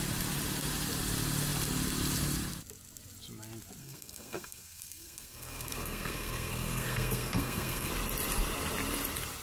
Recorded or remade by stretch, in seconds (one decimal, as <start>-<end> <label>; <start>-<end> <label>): 0.0-3.8 recorded; 3.8-7.9 remade; 7.9-9.4 recorded